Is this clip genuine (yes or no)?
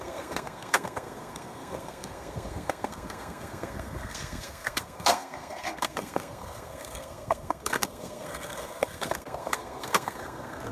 no